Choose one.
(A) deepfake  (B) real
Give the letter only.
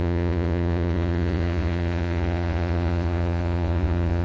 A